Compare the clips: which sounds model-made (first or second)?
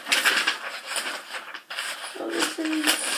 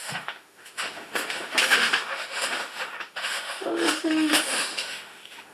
second